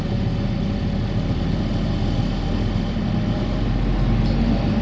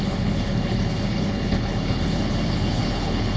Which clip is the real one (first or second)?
first